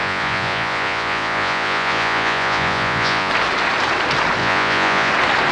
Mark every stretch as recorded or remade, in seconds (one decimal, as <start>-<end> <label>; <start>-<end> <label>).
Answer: 0.0-3.3 remade; 3.3-4.4 recorded; 4.4-5.1 remade; 5.1-5.5 recorded